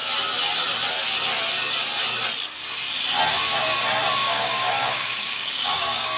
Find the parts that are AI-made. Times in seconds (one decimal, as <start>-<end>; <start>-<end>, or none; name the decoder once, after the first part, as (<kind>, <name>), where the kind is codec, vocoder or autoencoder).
4.2-6.2 (codec, DAC)